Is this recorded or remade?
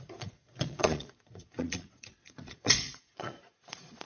remade